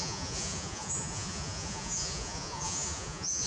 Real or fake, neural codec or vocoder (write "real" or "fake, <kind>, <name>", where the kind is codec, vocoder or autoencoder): fake, vocoder, Vocos